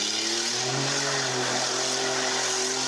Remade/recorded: recorded